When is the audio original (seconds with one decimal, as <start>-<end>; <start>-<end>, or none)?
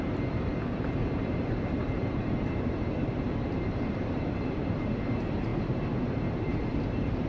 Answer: 0.0-0.5; 4.9-5.5